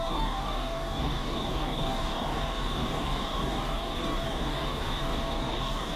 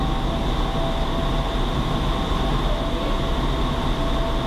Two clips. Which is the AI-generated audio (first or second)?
first